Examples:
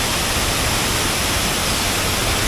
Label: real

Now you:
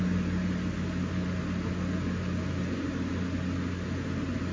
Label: real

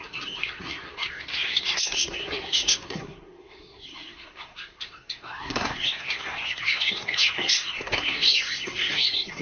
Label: fake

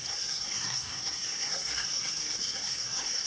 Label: fake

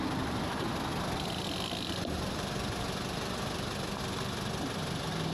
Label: real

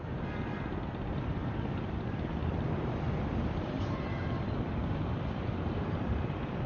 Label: fake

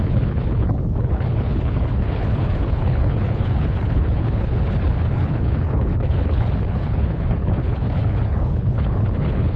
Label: fake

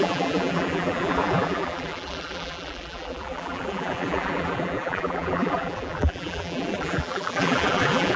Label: fake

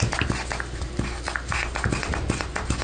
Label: real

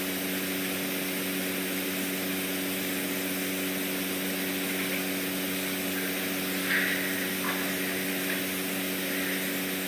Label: real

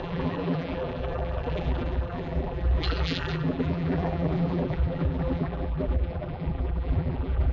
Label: fake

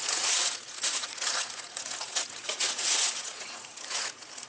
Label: fake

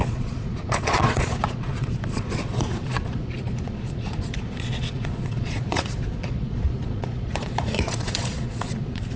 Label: fake